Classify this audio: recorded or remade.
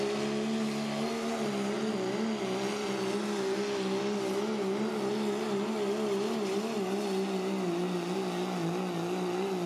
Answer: recorded